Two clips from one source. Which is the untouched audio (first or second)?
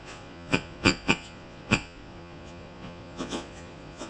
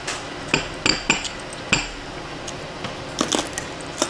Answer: second